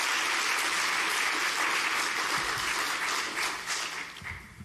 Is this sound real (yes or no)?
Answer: yes